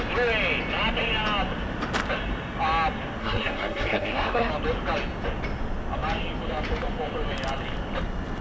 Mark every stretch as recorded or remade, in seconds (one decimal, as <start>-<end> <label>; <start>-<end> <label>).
0.0-3.2 recorded; 3.2-4.5 remade; 4.5-8.4 recorded